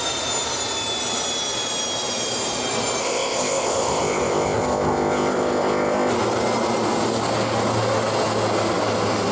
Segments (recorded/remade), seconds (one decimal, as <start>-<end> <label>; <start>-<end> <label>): 0.0-3.0 recorded; 3.0-6.1 remade; 6.1-9.3 recorded